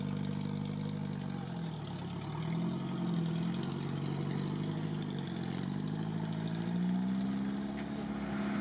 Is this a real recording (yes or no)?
yes